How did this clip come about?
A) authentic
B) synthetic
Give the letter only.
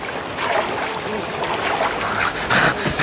A